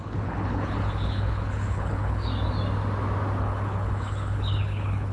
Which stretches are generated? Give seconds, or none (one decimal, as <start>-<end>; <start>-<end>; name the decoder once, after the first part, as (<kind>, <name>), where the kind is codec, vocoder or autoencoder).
0.0-2.3 (codec, HILCodec); 3.4-5.1